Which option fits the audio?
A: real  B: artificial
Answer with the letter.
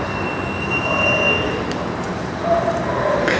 A